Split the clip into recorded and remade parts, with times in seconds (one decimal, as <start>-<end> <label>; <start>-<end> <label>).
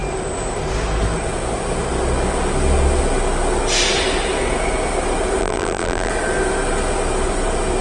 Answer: 0.0-5.4 recorded; 5.4-6.1 remade; 6.1-7.8 recorded